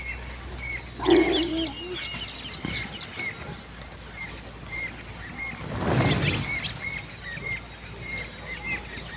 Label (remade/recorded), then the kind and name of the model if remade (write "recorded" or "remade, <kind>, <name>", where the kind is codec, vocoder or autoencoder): recorded